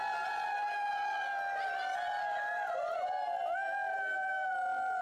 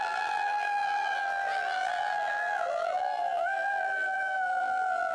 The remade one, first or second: second